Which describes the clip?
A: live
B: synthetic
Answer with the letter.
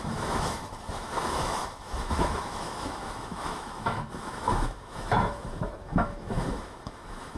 B